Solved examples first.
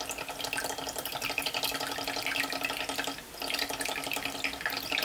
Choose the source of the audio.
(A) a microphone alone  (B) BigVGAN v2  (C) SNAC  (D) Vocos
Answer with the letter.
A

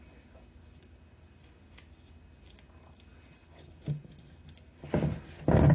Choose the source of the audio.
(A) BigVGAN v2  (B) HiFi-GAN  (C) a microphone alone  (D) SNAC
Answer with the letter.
C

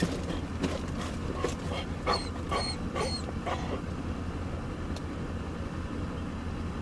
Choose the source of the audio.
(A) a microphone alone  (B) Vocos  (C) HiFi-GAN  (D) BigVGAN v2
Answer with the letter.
A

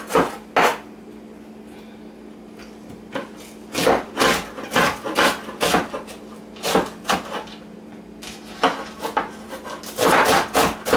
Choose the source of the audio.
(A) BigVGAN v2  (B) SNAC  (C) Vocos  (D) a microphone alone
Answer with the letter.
D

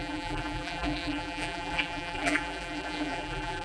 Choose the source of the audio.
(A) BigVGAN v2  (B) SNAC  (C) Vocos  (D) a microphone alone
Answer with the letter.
A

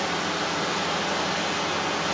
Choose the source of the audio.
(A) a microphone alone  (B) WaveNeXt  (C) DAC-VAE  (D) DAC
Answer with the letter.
A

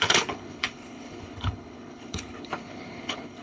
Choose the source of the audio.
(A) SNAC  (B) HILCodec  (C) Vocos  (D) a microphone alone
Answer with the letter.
B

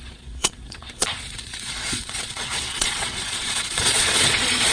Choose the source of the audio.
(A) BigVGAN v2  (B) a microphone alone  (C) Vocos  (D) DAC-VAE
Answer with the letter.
C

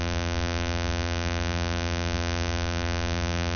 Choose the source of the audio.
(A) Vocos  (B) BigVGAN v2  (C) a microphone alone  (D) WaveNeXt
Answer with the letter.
B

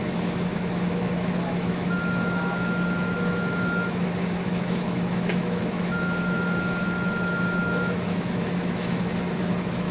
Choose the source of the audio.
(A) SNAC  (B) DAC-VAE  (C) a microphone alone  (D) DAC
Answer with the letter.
B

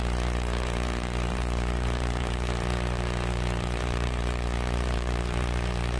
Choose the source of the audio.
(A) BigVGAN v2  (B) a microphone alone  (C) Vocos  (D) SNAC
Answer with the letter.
A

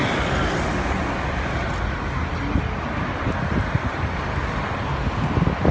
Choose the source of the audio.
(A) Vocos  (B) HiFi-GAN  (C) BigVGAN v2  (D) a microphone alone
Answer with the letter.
D